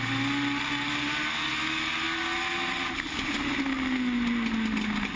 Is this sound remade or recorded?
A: recorded